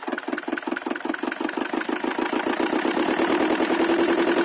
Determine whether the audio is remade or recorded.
recorded